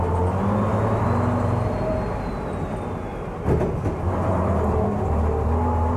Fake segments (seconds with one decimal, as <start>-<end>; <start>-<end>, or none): none